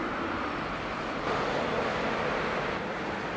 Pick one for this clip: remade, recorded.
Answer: recorded